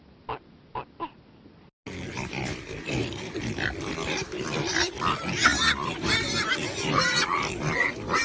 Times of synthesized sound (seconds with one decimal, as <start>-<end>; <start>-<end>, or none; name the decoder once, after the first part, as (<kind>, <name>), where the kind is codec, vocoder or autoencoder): none

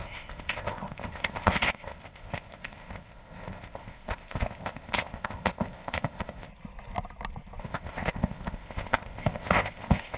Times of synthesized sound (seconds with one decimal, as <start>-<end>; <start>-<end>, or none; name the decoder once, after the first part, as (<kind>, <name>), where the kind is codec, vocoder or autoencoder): 0.0-6.5 (codec, ZipCodec); 7.6-10.2